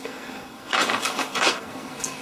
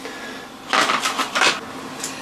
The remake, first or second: first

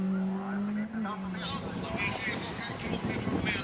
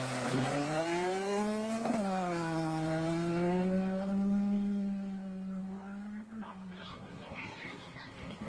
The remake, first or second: second